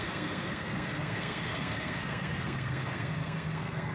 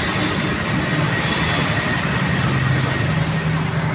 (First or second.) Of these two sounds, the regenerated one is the first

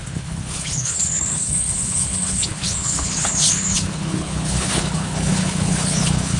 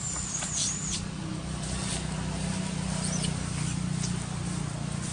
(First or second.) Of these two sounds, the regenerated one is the first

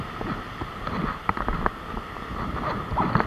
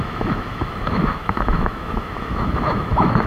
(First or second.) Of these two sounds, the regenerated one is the second